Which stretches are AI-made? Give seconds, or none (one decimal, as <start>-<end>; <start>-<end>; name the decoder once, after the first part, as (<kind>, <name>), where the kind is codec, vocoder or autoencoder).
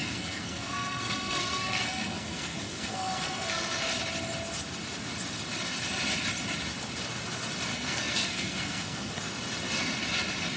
0.0-3.9 (codec, SNAC); 7.7-9.1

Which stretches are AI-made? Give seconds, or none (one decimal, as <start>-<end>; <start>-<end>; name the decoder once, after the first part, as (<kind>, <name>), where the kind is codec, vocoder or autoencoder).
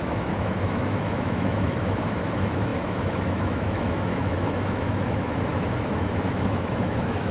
0.0-7.3 (autoencoder, DAC-VAE)